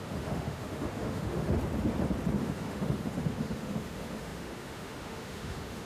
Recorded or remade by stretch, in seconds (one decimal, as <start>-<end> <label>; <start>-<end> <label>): 0.0-1.6 remade; 1.6-2.4 recorded; 2.4-5.9 remade